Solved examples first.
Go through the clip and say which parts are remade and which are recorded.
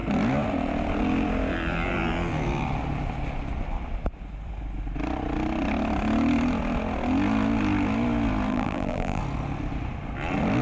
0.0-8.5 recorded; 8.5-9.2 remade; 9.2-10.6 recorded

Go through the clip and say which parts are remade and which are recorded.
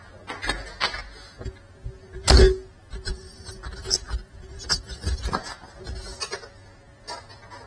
0.0-2.8 recorded; 2.8-5.3 remade; 5.3-7.7 recorded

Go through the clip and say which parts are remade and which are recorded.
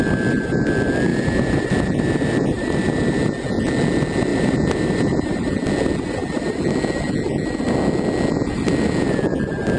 0.0-1.1 recorded; 1.1-3.2 remade; 3.2-4.3 recorded; 4.3-5.5 remade; 5.5-9.8 recorded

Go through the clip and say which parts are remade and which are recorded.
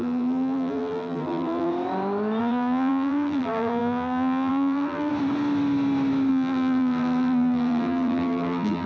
0.0-1.7 remade; 1.7-2.4 recorded; 2.4-5.1 remade; 5.1-6.3 recorded; 6.3-8.9 remade